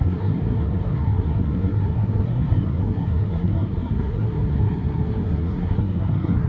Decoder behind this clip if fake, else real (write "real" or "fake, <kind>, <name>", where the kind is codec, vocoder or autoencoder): fake, codec, SNAC